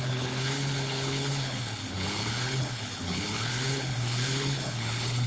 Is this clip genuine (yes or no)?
no